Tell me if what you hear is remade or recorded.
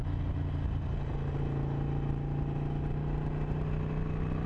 recorded